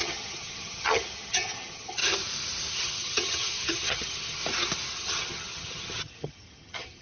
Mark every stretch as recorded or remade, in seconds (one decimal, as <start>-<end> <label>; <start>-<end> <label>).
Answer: 0.0-2.0 remade; 2.0-2.7 recorded; 2.7-4.4 remade; 4.4-4.9 recorded; 4.9-7.0 remade